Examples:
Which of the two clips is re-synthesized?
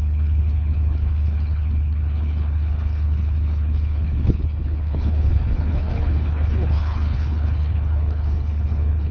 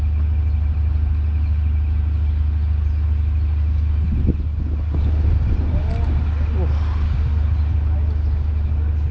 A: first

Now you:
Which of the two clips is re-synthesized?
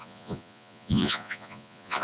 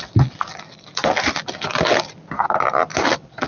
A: first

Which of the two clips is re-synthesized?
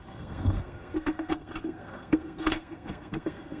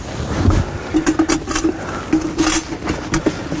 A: first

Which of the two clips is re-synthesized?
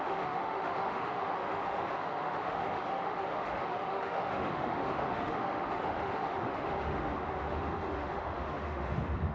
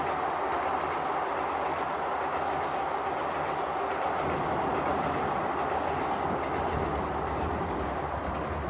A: first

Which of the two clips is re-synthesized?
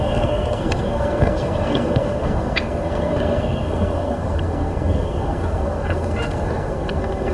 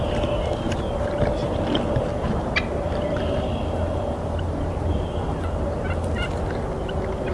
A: first